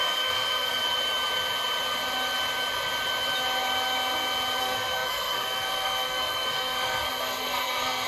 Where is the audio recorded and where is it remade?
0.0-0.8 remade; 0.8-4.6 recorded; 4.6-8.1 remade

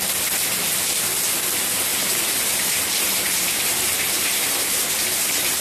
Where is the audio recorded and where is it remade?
0.0-1.9 recorded; 1.9-5.6 remade

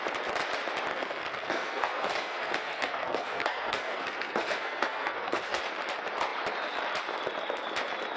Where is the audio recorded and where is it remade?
0.0-0.9 recorded; 0.9-5.6 remade; 5.6-8.2 recorded

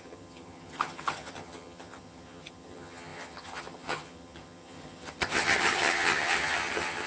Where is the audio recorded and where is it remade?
0.0-7.1 remade